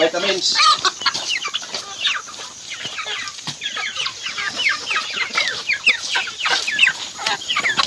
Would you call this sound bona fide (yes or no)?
yes